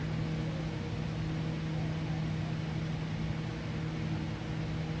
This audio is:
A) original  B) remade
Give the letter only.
A